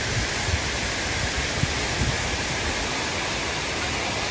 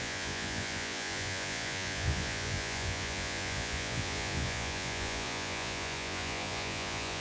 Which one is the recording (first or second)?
first